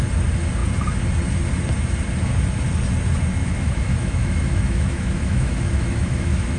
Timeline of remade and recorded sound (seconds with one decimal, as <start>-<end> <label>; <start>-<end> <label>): 0.0-3.4 recorded; 3.4-6.6 remade